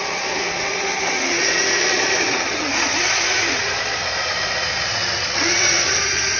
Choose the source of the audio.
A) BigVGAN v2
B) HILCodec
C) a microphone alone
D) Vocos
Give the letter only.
D